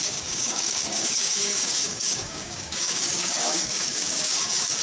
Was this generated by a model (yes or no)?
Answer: yes